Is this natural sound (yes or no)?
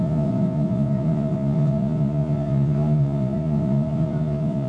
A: no